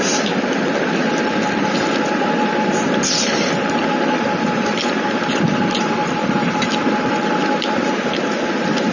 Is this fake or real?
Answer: fake